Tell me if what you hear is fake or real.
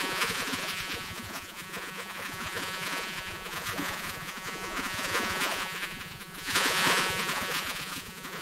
fake